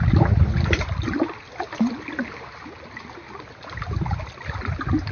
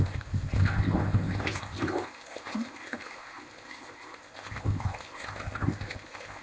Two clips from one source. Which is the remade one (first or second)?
second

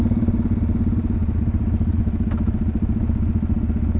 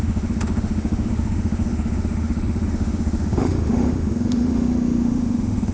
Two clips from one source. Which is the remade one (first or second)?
second